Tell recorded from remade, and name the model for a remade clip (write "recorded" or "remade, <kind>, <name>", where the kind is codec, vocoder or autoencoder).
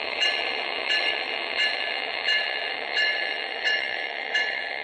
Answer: remade, vocoder, WaveNeXt